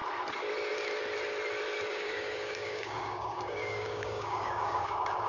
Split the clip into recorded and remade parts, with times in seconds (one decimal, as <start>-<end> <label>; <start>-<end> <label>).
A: 0.0-1.9 recorded; 1.9-5.3 remade